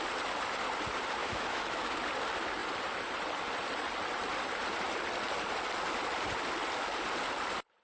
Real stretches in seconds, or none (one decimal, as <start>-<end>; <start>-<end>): 0.0-1.2; 1.9-7.8